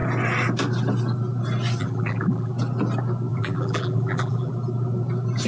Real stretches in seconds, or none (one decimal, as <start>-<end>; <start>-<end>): 0.0-1.8; 2.5-3.3; 4.5-5.5